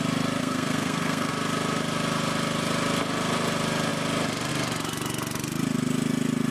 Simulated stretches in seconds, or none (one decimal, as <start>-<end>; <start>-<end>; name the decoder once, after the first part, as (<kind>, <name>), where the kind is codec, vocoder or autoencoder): 0.4-1.3 (codec, SNAC)